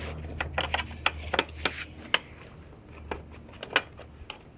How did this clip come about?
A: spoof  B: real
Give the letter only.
B